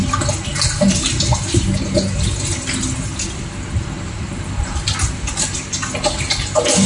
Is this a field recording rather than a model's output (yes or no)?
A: yes